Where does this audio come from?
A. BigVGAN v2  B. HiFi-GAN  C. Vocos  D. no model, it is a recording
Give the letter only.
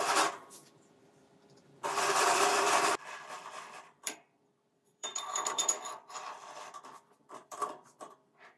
A